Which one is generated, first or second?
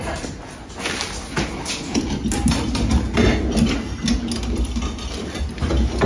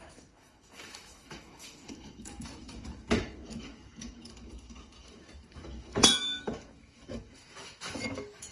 second